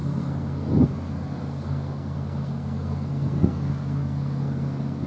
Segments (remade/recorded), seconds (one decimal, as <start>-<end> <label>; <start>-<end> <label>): 0.0-5.1 remade